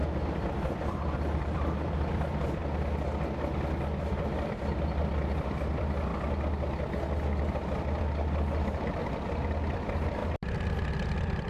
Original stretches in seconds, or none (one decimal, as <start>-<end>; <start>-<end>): 2.6-4.0; 6.1-7.4; 10.2-10.9